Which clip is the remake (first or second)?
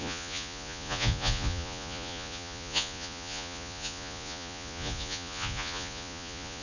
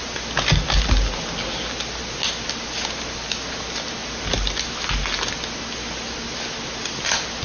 first